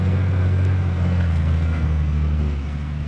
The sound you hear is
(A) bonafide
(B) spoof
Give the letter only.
B